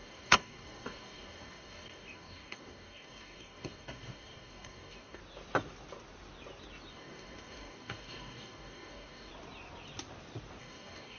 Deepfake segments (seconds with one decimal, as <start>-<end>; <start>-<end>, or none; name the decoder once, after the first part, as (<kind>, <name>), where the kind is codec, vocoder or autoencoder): 0.0-5.2 (codec, DAC); 6.9-9.3; 10.6-11.2